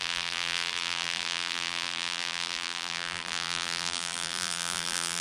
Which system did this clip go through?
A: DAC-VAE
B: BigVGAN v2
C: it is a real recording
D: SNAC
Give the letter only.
B